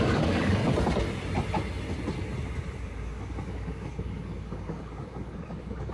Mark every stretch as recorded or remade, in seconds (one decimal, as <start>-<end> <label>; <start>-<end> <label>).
0.0-0.6 remade; 0.6-2.8 recorded; 2.8-5.9 remade